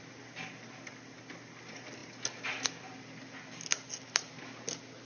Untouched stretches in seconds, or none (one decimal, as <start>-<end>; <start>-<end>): 0.0-5.0